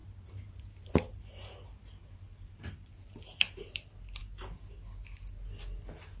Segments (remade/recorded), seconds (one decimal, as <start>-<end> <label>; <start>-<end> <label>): 0.0-6.2 recorded